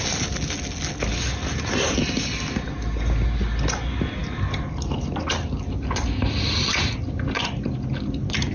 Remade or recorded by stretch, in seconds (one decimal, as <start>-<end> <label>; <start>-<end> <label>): 0.0-8.5 recorded